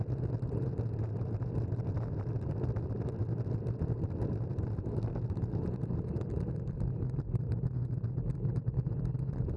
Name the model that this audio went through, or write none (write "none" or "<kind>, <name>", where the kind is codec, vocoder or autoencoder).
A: vocoder, BigVGAN v2